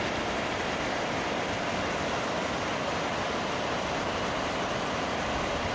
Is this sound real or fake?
real